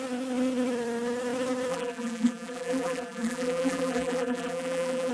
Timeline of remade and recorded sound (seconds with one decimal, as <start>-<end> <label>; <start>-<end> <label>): 0.0-1.7 recorded; 1.7-5.1 remade